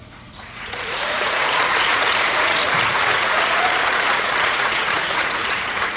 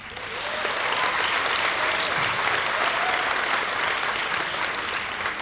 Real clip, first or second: second